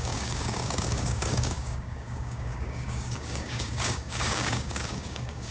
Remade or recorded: remade